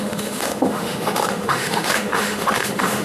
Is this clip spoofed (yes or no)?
yes